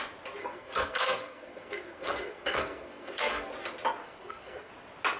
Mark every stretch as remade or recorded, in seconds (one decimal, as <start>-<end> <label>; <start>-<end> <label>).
0.0-0.4 recorded; 0.4-3.5 remade; 3.5-4.0 recorded; 4.0-4.7 remade; 4.7-5.2 recorded